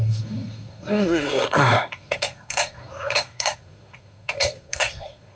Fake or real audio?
fake